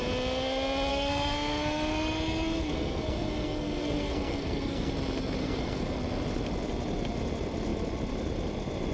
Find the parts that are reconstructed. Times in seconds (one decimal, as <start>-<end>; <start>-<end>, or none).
0.9-4.9; 5.4-6.0